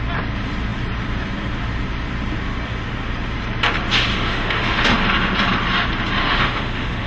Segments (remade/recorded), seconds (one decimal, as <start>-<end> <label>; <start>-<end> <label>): 0.0-4.1 recorded; 4.1-5.0 remade; 5.0-6.2 recorded; 6.2-7.1 remade